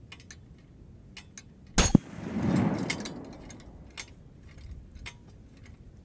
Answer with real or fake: real